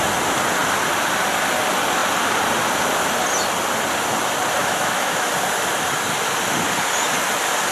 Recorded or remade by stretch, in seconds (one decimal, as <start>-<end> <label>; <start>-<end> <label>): 0.0-4.6 recorded; 4.6-5.3 remade; 5.3-7.7 recorded